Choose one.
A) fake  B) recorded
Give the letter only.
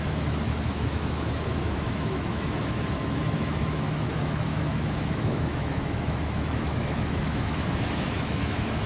A